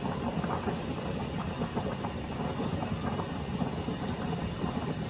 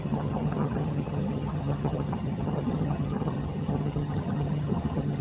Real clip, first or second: first